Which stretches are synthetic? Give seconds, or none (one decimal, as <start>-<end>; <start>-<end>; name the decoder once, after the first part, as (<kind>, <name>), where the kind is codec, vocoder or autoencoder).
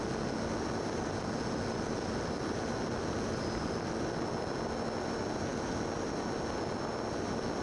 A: none